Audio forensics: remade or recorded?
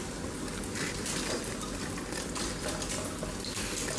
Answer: recorded